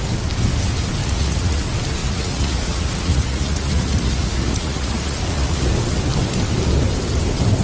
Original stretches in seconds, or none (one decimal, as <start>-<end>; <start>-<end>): 0.0-1.0; 1.6-2.0; 5.7-7.6